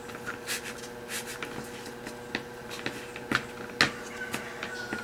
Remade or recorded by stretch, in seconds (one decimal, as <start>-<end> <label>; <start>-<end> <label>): 0.0-5.0 recorded